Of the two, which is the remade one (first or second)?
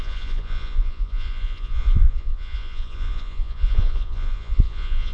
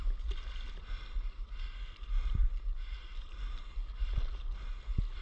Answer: first